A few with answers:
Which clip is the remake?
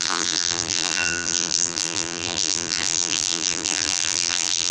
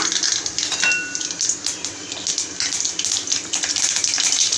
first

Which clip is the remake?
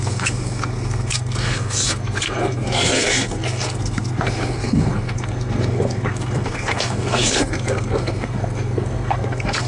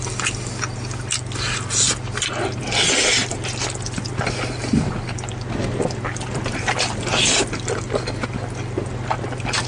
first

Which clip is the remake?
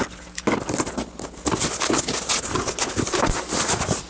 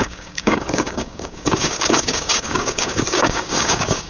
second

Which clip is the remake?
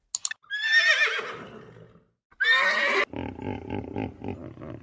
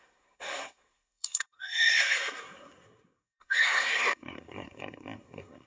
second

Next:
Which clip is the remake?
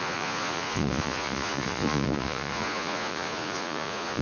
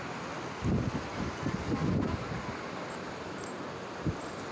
first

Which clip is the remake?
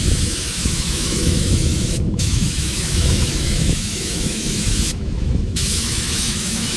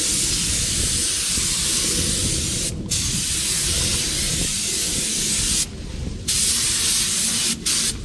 first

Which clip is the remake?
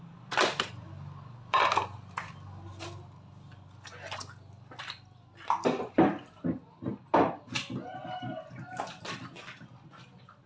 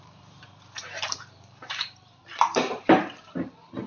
second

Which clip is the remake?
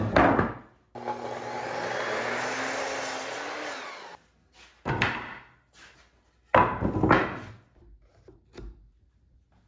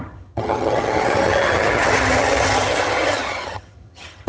second